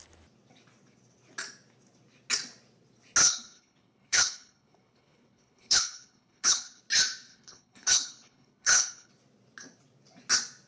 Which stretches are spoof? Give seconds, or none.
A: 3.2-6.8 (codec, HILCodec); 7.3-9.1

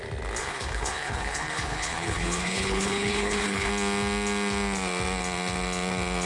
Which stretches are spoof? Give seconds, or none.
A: 0.4-3.7 (codec, HILCodec)

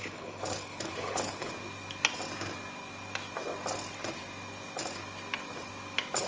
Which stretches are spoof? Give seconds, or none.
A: 0.0-1.5 (codec, HILCodec)

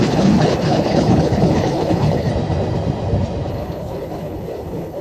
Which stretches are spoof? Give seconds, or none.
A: 0.0-2.3 (codec, HILCodec); 3.5-5.0